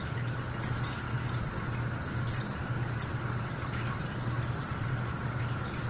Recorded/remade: remade